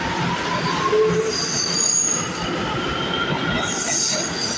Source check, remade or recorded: recorded